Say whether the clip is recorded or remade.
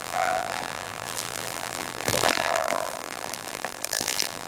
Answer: remade